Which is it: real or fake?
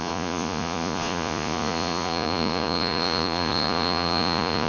fake